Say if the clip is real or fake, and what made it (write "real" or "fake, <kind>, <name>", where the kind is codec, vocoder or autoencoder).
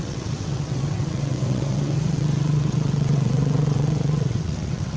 fake, vocoder, WaveNeXt